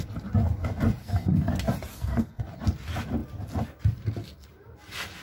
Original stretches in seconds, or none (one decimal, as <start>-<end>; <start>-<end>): 0.0-1.0; 1.5-1.9; 2.4-5.2